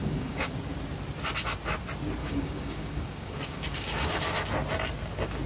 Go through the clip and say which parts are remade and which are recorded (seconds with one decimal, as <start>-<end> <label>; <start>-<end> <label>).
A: 0.0-0.5 remade; 0.5-2.2 recorded; 2.2-4.2 remade; 4.2-5.5 recorded